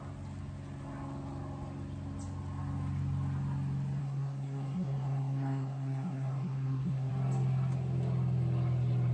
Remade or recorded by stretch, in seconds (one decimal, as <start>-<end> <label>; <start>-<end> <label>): 0.0-4.0 recorded; 4.0-7.1 remade; 7.1-9.1 recorded